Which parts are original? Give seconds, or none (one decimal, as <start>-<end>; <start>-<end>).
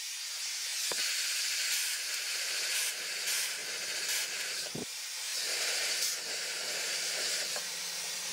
3.6-4.1; 5.3-5.9